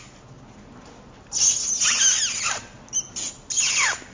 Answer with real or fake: real